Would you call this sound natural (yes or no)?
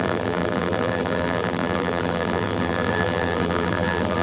no